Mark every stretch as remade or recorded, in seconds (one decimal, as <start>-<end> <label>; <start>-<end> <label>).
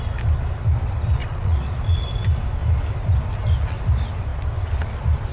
0.0-1.2 recorded; 1.2-2.0 remade; 2.0-5.3 recorded